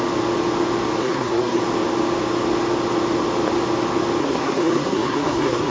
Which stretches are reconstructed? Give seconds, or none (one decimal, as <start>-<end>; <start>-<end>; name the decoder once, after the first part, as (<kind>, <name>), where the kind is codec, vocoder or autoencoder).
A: 1.0-1.6 (codec, SNAC); 4.2-5.7

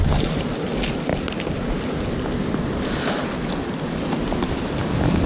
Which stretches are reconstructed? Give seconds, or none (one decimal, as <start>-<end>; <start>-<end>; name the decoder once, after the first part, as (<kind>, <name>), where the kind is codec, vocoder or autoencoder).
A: none

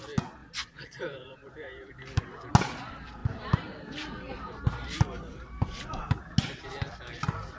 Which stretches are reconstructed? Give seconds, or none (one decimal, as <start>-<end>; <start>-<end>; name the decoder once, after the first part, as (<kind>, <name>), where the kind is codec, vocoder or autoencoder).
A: 0.4-1.9 (vocoder, BigVGAN v2); 3.2-6.2

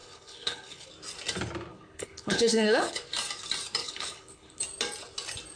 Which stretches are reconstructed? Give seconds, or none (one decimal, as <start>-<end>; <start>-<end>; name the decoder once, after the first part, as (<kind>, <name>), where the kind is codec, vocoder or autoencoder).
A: 0.0-0.9 (codec, HILCodec); 1.7-3.0; 3.8-4.6